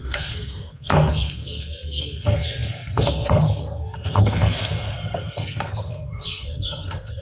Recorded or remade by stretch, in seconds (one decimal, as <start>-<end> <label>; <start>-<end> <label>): 0.0-7.2 remade